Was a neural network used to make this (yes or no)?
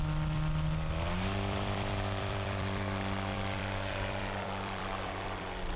yes